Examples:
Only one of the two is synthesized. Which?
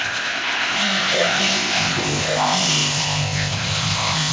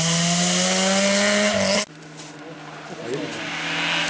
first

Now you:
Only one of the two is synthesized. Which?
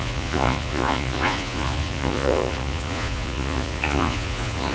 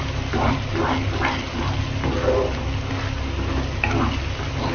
first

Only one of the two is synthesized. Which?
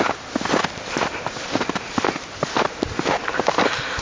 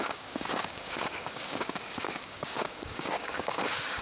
second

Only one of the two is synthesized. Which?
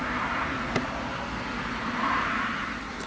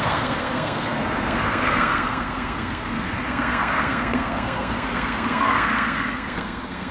second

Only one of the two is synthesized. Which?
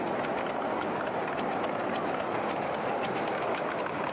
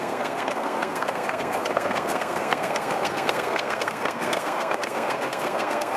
second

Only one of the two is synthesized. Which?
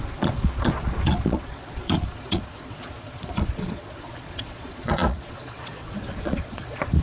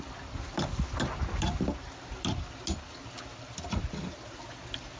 first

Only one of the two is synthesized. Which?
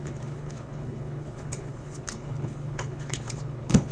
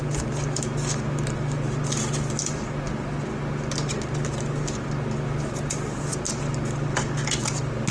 first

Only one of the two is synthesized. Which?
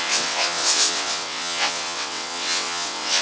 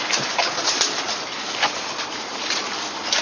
first